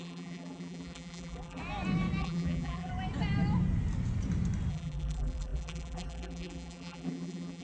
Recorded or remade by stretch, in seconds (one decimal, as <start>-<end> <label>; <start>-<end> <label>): 0.0-1.6 remade; 1.6-2.2 recorded; 2.2-2.9 remade; 2.9-4.7 recorded; 4.7-7.6 remade